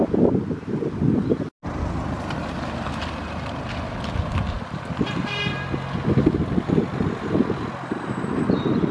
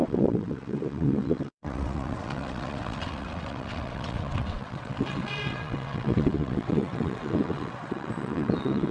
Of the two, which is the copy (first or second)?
second